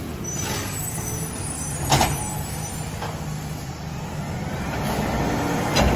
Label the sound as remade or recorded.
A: recorded